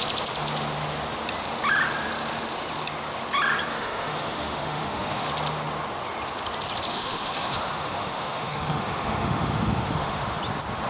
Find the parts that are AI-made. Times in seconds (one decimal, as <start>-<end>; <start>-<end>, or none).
3.7-5.3; 6.9-10.4